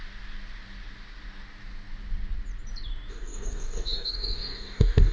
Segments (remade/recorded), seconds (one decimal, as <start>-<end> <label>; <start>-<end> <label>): 0.0-3.1 recorded; 3.1-5.1 remade